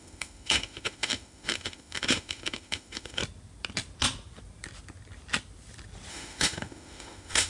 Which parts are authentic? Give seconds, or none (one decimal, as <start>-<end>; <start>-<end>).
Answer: 3.2-6.1